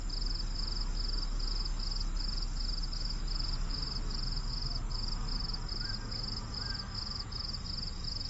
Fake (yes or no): no